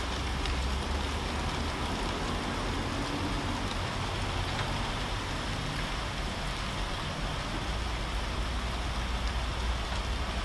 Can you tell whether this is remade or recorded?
recorded